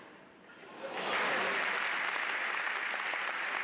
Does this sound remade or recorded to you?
recorded